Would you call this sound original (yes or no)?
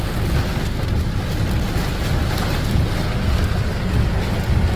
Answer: yes